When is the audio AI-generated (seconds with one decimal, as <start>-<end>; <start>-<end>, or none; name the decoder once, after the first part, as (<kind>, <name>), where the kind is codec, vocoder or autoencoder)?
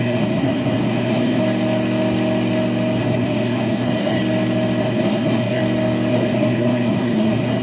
0.0-1.4 (codec, SNAC); 3.0-4.2; 4.8-5.6; 6.1-7.6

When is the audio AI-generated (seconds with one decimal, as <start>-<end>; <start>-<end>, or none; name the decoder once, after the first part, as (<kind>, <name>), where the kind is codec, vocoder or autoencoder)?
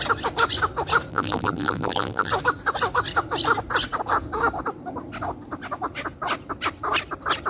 1.1-2.3 (vocoder, BigVGAN v2)